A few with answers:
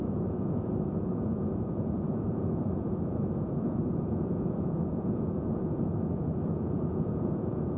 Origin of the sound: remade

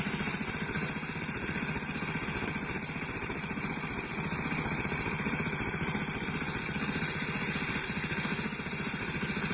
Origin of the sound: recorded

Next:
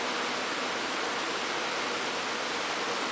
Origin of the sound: recorded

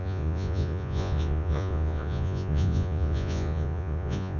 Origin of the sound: remade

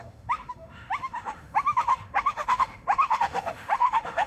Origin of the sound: remade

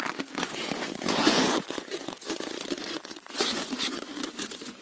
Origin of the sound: remade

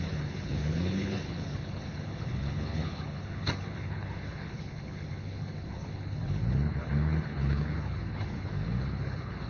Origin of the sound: remade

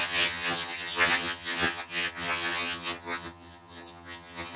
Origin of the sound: remade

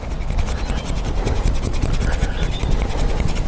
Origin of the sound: recorded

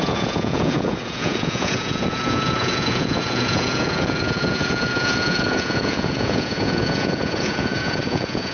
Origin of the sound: remade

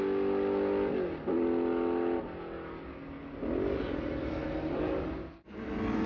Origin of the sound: recorded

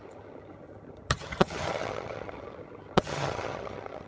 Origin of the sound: remade